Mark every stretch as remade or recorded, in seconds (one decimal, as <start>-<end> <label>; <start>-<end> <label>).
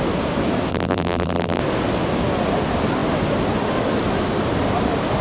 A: 0.0-0.7 recorded; 0.7-1.6 remade; 1.6-5.2 recorded